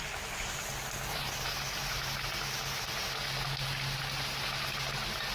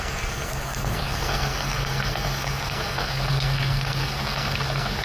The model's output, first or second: second